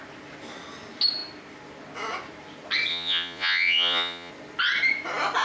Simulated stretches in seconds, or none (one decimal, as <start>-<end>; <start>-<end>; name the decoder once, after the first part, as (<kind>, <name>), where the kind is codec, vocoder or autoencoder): 2.9-4.3 (vocoder, Vocos)